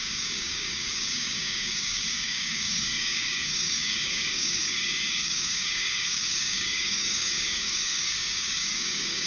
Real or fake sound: fake